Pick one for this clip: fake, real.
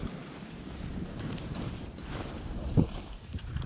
fake